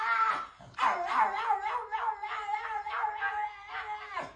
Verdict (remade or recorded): recorded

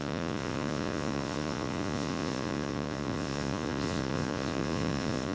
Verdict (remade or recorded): remade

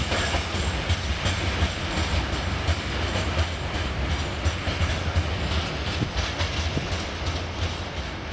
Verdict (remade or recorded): recorded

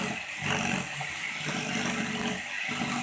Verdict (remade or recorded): recorded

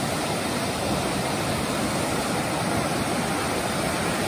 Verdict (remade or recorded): recorded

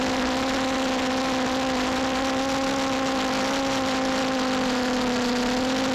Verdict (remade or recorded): recorded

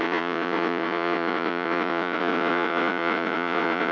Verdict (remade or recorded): remade